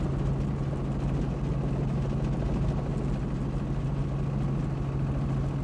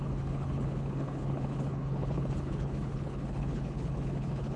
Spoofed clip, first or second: second